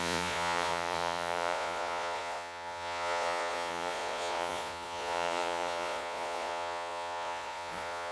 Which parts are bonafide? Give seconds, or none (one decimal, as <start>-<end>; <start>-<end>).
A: none